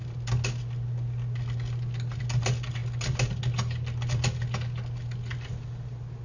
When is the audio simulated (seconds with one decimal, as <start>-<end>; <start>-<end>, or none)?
none